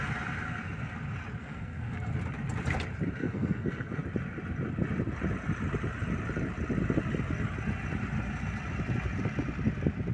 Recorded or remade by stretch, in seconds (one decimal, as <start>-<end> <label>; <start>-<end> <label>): 0.0-1.4 recorded; 1.4-2.1 remade; 2.1-3.2 recorded; 3.2-4.0 remade; 4.0-10.1 recorded